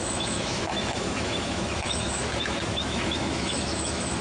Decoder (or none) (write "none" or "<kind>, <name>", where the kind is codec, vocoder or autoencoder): autoencoder, DAC-VAE